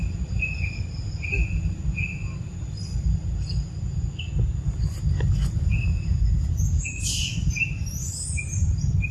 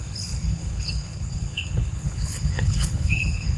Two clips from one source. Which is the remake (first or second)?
second